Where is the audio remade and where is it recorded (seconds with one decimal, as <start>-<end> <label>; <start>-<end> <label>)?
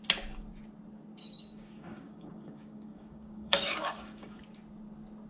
0.0-1.2 recorded; 1.2-4.4 remade; 4.4-5.3 recorded